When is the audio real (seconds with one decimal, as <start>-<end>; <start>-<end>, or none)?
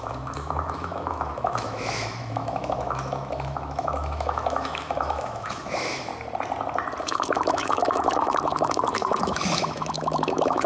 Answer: 6.1-7.0